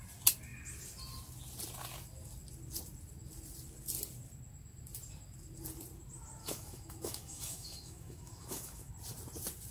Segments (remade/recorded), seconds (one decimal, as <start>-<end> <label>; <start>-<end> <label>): 0.0-6.4 recorded; 6.4-8.9 remade; 8.9-9.7 recorded